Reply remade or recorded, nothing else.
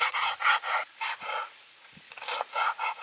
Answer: remade